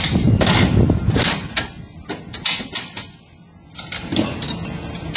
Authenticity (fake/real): real